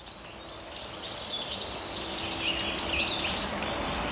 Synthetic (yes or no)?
no